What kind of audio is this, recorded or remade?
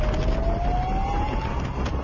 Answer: recorded